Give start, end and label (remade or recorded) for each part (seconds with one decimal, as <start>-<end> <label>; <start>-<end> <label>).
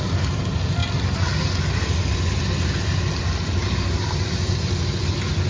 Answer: 0.0-5.5 recorded